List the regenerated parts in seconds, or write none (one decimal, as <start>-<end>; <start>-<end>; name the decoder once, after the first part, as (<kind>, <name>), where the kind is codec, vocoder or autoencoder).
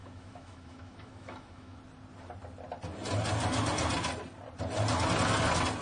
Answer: 0.0-1.8 (autoencoder, DAC-VAE)